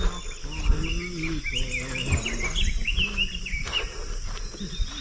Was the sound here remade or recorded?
recorded